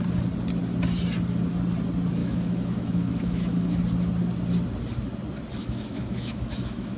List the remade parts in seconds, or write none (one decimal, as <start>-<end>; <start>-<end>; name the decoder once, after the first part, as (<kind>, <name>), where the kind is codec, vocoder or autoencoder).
2.2-3.8 (autoencoder, DAC-VAE); 5.6-7.0